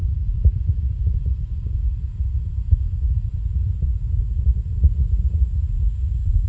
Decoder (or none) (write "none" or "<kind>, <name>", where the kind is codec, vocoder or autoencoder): vocoder, Vocos